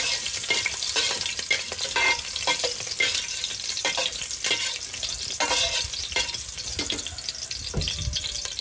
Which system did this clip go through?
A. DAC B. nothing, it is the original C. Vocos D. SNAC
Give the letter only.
B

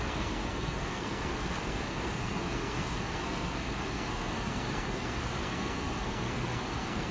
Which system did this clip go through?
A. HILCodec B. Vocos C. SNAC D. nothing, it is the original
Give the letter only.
C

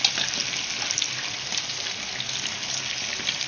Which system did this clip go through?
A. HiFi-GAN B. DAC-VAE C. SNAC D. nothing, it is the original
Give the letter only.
D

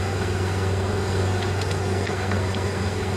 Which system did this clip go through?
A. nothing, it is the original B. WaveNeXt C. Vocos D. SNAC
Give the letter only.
D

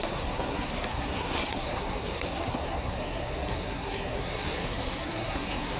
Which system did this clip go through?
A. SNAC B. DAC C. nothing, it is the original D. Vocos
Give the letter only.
A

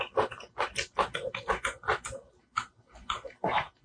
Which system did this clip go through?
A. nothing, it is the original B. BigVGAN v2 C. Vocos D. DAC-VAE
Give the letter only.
A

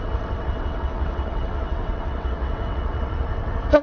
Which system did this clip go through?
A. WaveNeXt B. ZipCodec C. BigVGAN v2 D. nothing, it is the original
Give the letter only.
A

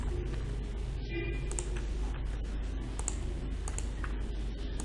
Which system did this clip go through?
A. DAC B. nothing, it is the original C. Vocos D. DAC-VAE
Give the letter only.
B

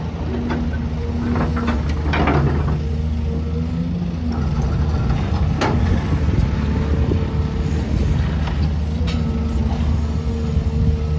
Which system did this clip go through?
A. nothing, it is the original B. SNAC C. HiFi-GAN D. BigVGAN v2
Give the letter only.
A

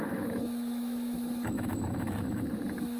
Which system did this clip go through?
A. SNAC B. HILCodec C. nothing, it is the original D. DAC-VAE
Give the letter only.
D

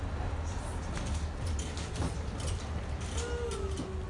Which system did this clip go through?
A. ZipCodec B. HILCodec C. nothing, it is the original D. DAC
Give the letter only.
C